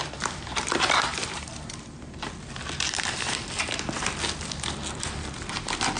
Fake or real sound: fake